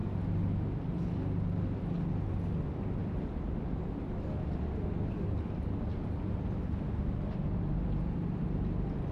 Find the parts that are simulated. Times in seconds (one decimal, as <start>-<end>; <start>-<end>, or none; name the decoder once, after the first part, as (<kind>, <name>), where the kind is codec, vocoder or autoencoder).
none